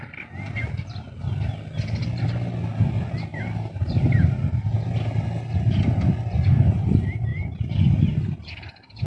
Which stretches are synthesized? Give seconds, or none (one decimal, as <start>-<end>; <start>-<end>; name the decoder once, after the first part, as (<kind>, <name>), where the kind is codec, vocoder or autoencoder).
3.3-4.6 (vocoder, BigVGAN v2); 7.3-8.1